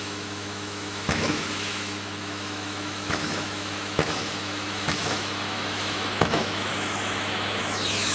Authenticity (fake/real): fake